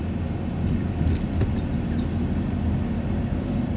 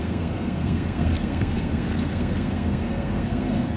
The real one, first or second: first